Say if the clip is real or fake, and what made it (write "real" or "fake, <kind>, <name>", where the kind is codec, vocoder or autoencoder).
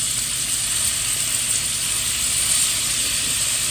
fake, vocoder, BigVGAN v2